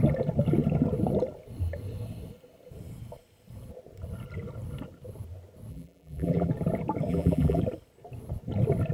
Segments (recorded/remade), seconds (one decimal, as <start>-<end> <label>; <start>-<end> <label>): 0.0-5.7 recorded; 5.7-6.5 remade; 6.5-7.1 recorded; 7.1-7.6 remade; 7.6-8.9 recorded

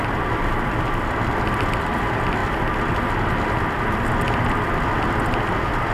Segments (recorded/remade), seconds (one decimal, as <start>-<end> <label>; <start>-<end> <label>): 0.0-5.9 recorded